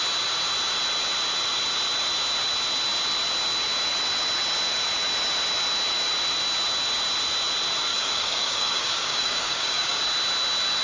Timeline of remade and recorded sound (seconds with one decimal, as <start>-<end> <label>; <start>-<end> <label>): 0.0-7.9 recorded; 7.9-10.0 remade; 10.0-10.8 recorded